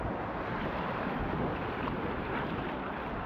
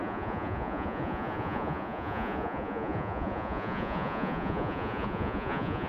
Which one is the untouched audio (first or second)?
first